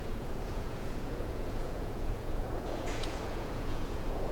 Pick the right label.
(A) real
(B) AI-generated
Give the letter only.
B